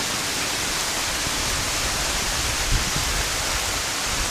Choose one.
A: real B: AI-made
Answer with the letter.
A